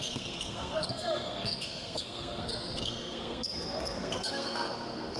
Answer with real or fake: fake